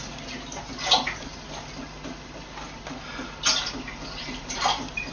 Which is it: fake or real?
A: real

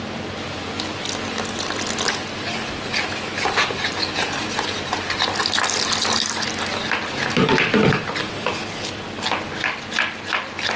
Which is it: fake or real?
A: real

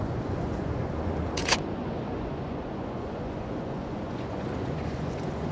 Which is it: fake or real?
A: fake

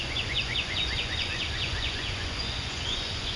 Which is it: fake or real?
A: fake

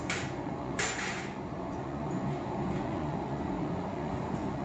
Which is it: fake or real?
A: fake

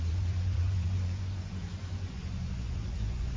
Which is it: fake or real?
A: fake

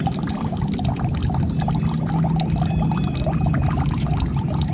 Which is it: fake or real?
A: real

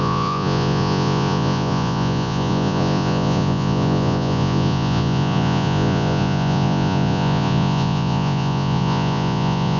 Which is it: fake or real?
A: fake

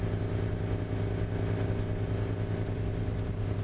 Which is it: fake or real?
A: real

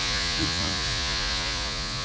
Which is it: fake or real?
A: fake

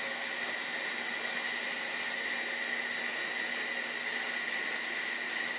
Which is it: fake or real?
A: real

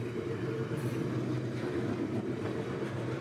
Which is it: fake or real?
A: real